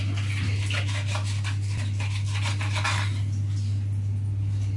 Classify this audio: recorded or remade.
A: recorded